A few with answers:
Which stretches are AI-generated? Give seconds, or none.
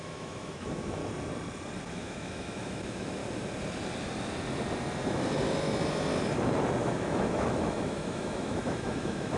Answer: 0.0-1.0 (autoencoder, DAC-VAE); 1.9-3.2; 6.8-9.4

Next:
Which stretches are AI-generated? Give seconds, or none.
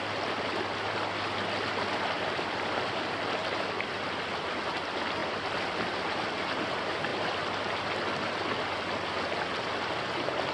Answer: none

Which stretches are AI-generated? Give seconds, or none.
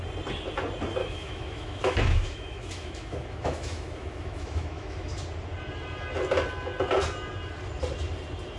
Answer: 1.0-5.2 (autoencoder, DAC-VAE)